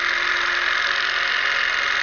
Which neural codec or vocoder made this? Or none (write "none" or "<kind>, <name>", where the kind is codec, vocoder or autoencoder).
none